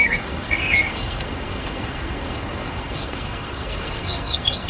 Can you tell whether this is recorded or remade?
remade